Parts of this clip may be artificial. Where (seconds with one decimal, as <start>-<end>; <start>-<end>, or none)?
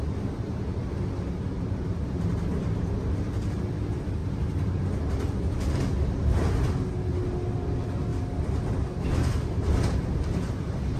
none